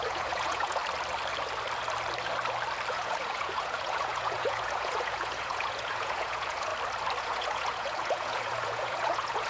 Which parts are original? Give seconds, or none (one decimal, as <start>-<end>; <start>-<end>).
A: 0.8-2.9; 6.7-7.2